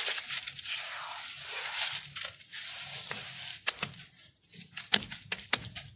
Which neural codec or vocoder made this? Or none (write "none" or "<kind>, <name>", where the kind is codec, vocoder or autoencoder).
none